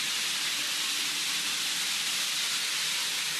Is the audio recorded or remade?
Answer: recorded